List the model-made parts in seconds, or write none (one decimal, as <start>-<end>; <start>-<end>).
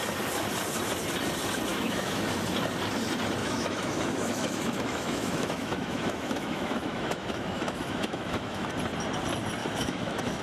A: 1.7-2.2; 3.4-8.7; 9.6-10.4